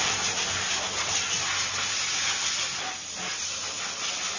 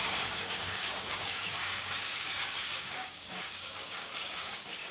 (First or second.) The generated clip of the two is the second